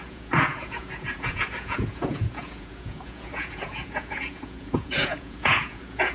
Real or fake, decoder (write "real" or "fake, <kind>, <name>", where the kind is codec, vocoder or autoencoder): fake, vocoder, Vocos